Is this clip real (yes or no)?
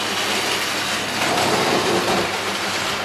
yes